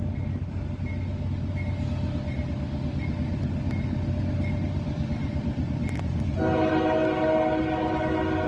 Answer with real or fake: real